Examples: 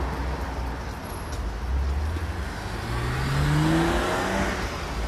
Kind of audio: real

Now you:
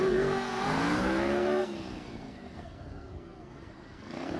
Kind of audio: fake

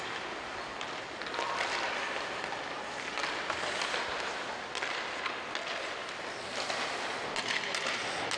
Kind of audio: real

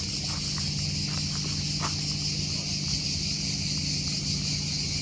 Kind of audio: real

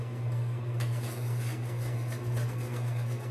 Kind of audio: fake